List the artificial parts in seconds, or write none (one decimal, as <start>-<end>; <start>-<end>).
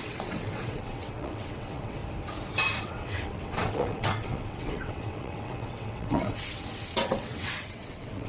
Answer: 0.0-2.0; 2.8-8.3